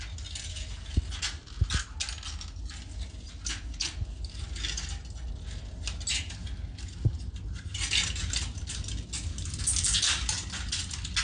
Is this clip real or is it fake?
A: real